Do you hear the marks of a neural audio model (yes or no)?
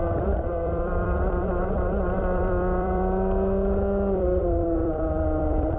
yes